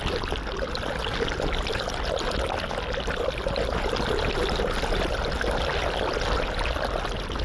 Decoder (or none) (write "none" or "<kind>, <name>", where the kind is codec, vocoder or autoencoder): none